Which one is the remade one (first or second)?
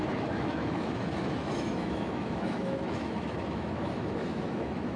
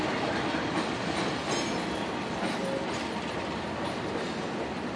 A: first